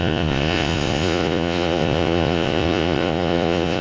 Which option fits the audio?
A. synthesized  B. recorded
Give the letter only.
A